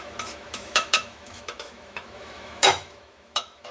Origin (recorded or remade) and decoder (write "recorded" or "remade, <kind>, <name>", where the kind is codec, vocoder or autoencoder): remade, autoencoder, DAC-VAE